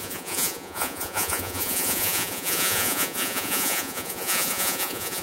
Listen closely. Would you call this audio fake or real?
fake